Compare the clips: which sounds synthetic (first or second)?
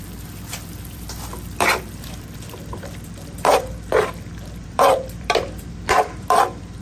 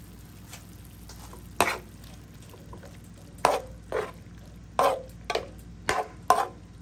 first